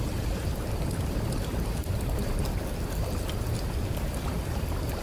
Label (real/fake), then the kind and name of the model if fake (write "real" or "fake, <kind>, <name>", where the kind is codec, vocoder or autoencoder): real